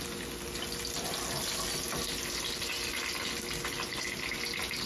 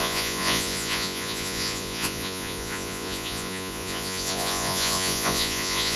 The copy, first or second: second